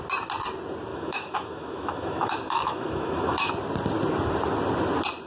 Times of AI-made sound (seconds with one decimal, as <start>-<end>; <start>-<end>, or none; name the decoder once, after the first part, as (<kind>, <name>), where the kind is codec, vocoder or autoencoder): 0.9-3.5 (autoencoder, DAC-VAE)